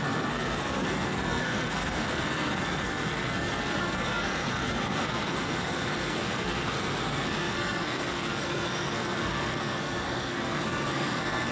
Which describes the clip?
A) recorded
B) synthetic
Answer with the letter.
B